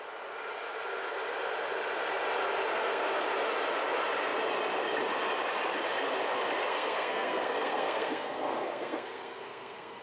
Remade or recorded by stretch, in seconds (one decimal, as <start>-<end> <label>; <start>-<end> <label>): 0.0-2.7 recorded; 2.7-3.2 remade; 3.2-6.7 recorded; 6.7-10.0 remade